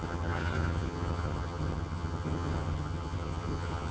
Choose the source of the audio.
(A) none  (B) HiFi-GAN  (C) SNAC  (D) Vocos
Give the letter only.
B